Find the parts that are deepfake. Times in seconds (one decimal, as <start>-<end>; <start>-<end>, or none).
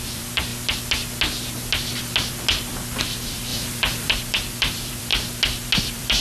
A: 0.0-0.5; 3.0-5.1; 5.8-6.2